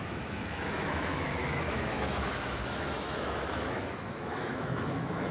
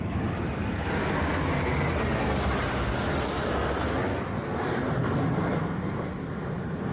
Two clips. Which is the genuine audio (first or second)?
second